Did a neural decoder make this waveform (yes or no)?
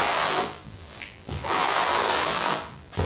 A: yes